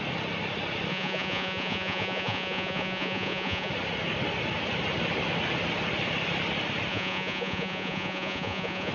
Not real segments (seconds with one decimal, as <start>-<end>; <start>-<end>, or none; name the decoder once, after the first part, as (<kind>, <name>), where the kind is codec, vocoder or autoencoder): 0.9-3.7 (vocoder, Vocos); 6.9-8.9